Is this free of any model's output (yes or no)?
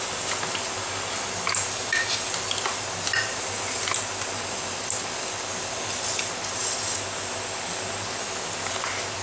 yes